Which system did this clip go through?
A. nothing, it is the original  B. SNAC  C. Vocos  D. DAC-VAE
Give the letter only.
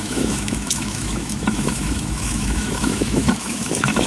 D